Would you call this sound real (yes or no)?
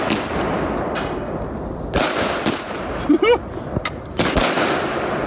yes